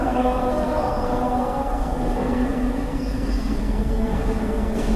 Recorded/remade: remade